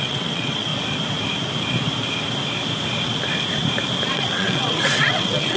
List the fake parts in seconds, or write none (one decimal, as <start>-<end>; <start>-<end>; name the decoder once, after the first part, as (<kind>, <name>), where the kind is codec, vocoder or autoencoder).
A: 0.0-0.7 (vocoder, WaveNeXt); 4.1-5.6